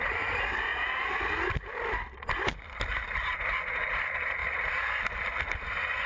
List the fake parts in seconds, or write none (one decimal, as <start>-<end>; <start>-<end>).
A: none